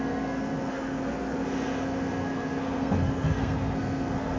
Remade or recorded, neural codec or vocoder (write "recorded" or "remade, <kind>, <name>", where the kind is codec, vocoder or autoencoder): remade, codec, SNAC